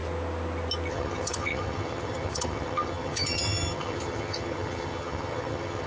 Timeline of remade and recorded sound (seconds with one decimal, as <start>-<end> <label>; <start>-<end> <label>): 0.0-0.9 recorded; 0.9-5.9 remade